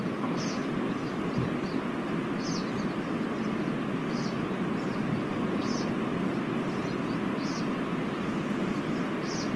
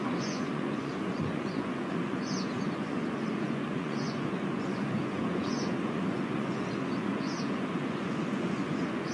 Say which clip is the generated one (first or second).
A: second